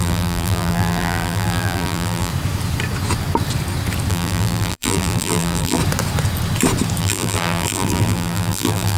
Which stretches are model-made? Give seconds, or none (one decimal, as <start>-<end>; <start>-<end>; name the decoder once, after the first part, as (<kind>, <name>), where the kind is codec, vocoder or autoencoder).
0.0-2.3 (vocoder, BigVGAN v2); 4.1-5.8; 7.0-9.0